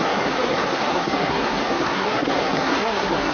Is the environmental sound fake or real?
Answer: fake